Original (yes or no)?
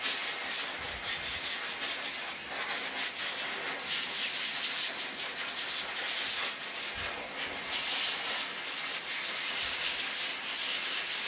yes